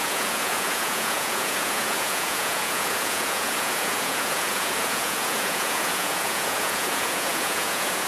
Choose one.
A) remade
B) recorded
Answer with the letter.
A